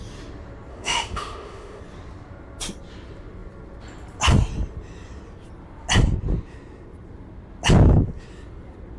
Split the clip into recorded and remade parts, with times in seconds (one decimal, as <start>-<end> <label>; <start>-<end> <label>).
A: 0.0-0.7 recorded; 0.7-1.8 remade; 1.8-9.0 recorded